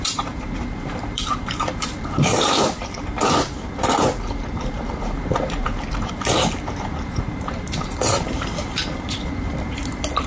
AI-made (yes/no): yes